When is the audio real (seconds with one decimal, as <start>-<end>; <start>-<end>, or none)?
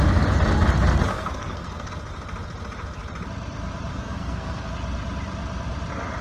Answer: 0.0-1.1; 1.9-3.9; 4.7-6.2